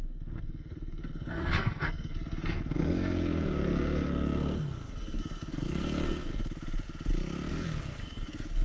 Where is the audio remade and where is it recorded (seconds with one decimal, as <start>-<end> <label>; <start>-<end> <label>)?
0.0-6.4 remade; 6.4-7.5 recorded; 7.5-8.6 remade